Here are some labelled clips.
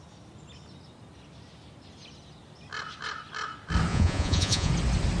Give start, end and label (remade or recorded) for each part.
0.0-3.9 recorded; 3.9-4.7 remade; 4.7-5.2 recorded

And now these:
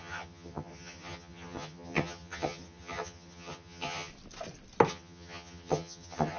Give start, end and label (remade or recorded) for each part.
0.0-4.1 remade; 4.1-4.9 recorded; 4.9-6.4 remade

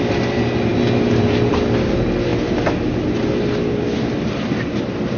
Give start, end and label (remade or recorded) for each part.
0.0-5.2 recorded

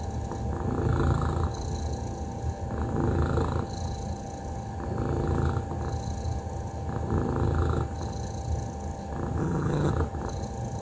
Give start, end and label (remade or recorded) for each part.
0.0-9.4 recorded; 9.4-9.9 remade; 9.9-10.8 recorded